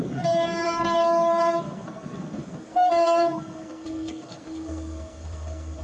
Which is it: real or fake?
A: fake